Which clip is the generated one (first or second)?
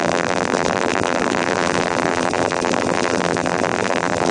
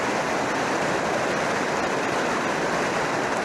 first